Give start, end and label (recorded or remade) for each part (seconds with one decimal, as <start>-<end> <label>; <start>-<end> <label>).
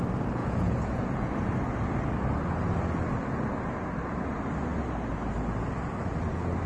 0.0-0.4 recorded; 0.4-1.3 remade; 1.3-6.7 recorded